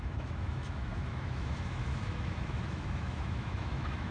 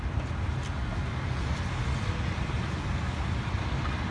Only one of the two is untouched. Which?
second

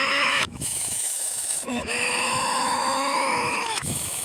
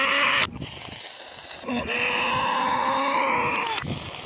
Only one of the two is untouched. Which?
second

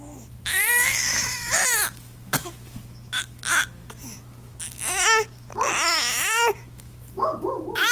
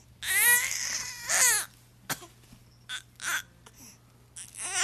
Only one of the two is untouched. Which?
second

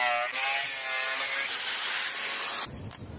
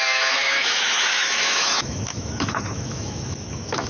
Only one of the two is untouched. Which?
first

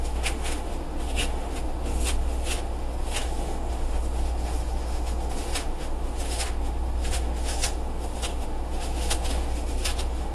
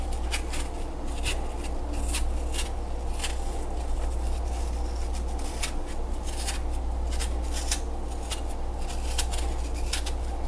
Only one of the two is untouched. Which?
second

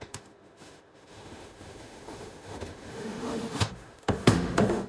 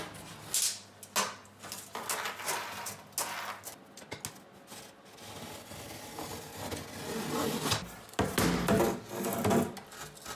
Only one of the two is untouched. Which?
second